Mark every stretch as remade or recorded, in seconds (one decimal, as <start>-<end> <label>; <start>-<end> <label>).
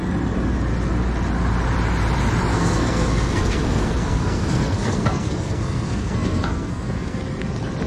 0.0-2.5 recorded; 2.5-7.2 remade; 7.2-7.9 recorded